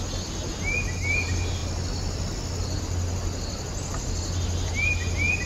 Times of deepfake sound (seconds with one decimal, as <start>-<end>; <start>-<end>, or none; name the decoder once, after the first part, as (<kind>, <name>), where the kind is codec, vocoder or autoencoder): none